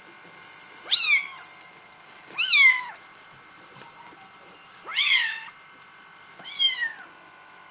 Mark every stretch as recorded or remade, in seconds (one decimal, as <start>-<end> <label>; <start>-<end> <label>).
0.0-4.9 recorded; 4.9-5.5 remade; 5.5-7.7 recorded